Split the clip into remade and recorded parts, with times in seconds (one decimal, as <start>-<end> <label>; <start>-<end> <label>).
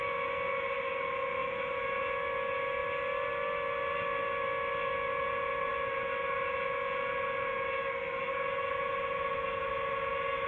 0.0-10.5 recorded